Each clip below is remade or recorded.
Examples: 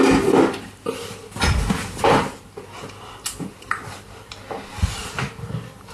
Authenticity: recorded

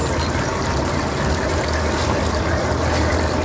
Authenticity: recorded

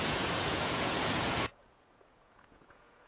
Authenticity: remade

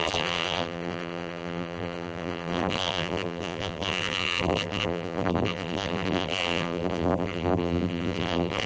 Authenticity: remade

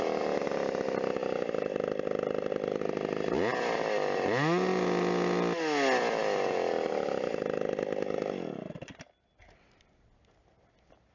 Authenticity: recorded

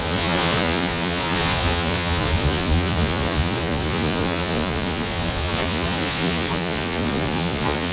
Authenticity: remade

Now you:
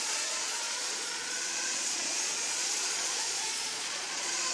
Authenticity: remade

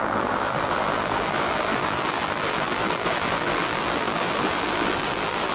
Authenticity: remade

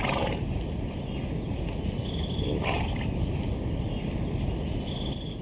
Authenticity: recorded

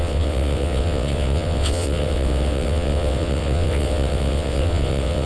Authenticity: remade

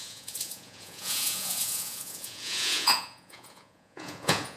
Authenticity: remade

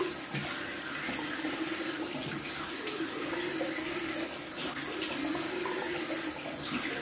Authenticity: recorded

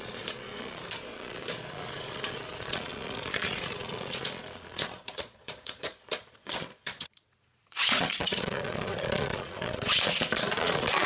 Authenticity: remade